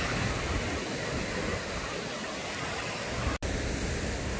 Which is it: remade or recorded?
recorded